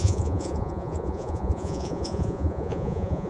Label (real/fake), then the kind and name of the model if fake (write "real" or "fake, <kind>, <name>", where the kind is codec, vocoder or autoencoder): fake, vocoder, Vocos